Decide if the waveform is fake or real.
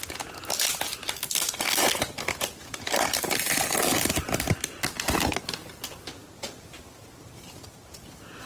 real